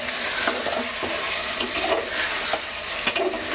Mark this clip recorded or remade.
recorded